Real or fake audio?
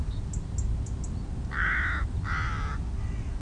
real